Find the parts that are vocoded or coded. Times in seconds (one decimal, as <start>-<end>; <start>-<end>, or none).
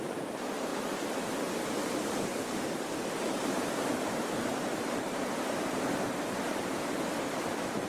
0.0-7.9